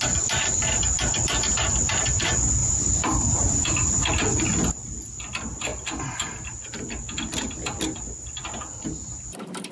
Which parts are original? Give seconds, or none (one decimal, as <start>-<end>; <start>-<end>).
0.0-2.6; 4.0-9.7